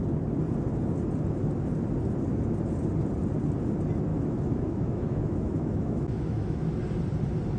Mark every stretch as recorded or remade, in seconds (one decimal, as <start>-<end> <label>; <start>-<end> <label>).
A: 0.0-4.1 recorded; 4.1-6.8 remade; 6.8-7.6 recorded